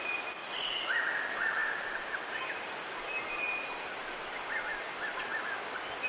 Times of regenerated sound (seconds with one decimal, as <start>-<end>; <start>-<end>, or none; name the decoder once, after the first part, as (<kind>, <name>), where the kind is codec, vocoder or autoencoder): 0.4-1.1 (vocoder, Vocos)